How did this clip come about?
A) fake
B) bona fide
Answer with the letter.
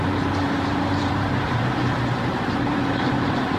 A